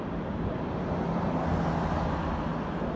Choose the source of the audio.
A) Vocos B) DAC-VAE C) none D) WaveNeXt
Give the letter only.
C